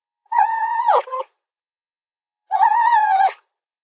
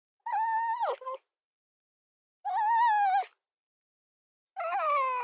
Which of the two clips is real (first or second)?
second